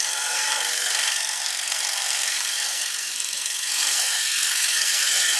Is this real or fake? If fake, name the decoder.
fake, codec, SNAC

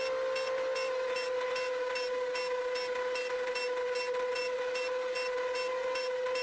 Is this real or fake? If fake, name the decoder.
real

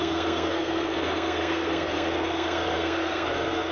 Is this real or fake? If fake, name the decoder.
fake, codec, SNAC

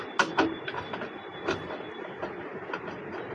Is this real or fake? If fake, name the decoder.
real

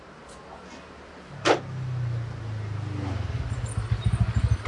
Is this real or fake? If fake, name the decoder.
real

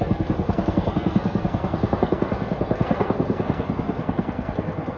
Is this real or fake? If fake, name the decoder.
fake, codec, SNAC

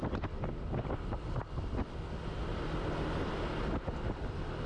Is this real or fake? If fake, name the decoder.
real